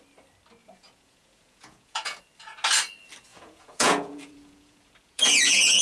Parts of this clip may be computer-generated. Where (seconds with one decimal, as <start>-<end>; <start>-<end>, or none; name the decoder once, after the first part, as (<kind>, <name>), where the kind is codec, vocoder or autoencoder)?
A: 0.6-2.2 (vocoder, Vocos); 3.3-5.8